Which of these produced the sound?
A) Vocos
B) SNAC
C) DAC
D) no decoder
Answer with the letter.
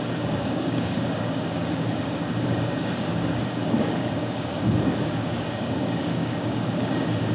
C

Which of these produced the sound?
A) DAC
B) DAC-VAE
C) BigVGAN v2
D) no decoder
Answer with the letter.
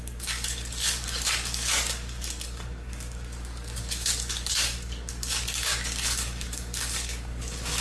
A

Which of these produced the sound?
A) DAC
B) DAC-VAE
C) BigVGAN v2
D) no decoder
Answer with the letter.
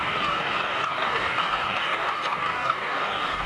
A